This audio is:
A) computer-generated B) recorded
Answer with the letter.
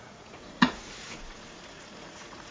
A